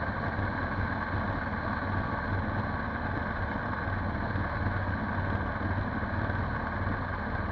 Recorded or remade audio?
recorded